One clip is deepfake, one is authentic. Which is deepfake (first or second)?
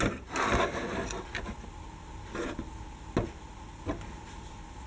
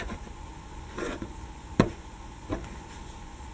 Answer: second